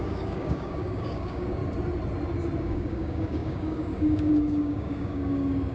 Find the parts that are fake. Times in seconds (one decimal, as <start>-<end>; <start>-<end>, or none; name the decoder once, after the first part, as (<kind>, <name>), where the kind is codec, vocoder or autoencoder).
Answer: 0.0-1.6 (codec, DAC); 2.6-5.7